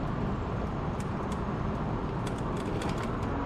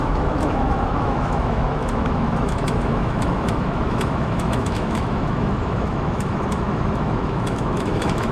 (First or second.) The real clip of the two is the first